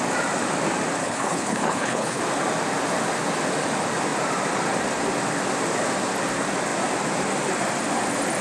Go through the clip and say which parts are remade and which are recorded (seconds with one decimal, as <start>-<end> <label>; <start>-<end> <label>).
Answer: 0.0-1.0 recorded; 1.0-2.2 remade; 2.2-8.4 recorded